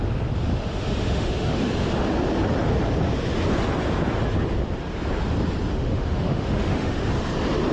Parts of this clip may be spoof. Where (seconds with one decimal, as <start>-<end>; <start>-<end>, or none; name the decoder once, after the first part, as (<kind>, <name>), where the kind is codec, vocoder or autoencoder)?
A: 0.5-1.6 (autoencoder, DAC-VAE); 5.7-7.1